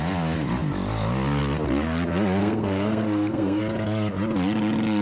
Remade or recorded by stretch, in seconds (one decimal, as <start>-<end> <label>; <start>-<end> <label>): 0.0-2.4 recorded; 2.4-3.6 remade; 3.6-5.0 recorded

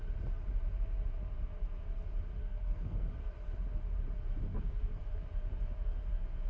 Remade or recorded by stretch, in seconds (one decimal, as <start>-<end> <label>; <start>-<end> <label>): 0.0-2.4 recorded; 2.4-3.1 remade; 3.1-4.5 recorded; 4.5-5.0 remade; 5.0-6.5 recorded